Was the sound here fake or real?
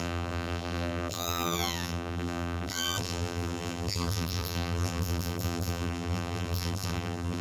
fake